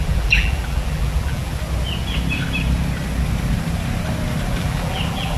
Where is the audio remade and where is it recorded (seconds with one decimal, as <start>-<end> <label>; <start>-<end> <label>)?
0.0-1.5 remade; 1.5-4.6 recorded; 4.6-5.4 remade